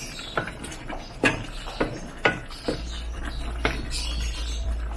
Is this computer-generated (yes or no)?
no